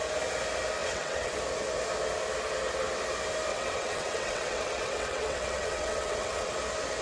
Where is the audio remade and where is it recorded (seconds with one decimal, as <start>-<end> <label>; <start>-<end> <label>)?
0.0-0.8 recorded; 0.8-1.4 remade; 1.4-3.5 recorded; 3.5-6.5 remade; 6.5-7.0 recorded